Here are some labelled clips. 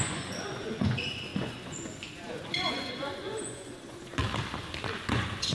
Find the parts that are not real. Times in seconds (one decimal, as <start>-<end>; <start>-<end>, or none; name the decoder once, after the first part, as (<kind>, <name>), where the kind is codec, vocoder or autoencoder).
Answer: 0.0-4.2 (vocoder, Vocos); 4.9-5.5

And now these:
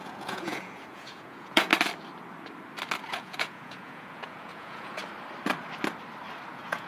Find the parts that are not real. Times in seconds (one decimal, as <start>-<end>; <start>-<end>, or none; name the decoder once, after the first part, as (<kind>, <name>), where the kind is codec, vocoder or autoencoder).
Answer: 0.0-1.7 (vocoder, Vocos); 3.1-5.0; 6.5-6.9

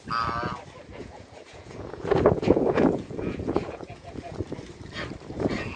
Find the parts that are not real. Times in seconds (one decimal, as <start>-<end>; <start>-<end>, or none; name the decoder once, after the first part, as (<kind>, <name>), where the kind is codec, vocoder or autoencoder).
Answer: 0.9-4.4 (vocoder, Vocos)

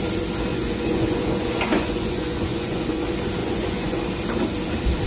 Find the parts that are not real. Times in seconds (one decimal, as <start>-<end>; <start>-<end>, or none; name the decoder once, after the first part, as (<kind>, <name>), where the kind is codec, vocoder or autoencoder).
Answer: 0.5-3.0 (vocoder, Vocos); 3.4-4.0

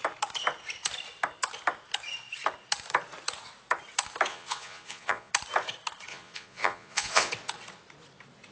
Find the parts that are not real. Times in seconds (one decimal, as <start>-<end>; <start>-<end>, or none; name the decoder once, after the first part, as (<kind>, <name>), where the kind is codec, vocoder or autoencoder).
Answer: 4.3-5.3 (vocoder, Vocos); 6.1-7.3

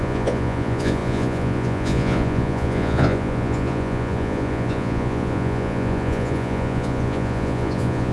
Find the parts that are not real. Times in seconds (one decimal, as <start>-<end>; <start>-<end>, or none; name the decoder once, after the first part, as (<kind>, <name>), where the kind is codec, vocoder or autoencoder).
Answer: 0.0-8.1 (vocoder, Vocos)

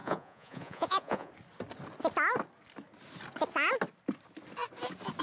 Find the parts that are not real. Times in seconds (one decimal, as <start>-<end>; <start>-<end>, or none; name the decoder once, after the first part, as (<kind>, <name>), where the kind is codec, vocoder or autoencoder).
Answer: 0.0-1.3 (vocoder, Vocos)

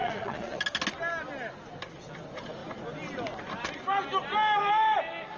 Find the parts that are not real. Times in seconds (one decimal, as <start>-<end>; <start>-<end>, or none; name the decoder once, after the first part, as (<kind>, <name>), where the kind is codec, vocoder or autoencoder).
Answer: 0.0-0.6 (vocoder, Vocos)